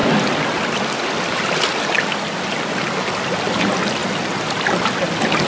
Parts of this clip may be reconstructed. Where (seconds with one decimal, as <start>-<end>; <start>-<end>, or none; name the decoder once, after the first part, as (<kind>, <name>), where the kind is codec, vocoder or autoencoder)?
none